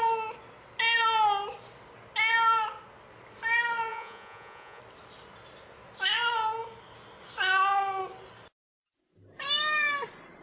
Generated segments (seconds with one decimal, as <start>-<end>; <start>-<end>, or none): 3.9-4.8

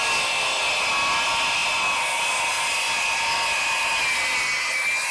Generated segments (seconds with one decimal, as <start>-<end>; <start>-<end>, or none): none

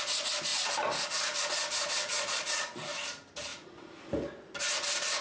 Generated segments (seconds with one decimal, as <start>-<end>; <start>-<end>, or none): 2.1-2.6